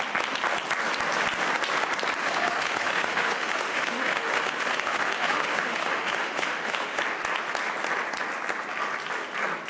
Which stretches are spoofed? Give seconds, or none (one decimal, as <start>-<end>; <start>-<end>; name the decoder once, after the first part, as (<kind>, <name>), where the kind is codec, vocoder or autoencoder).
2.2-7.0 (autoencoder, DAC-VAE)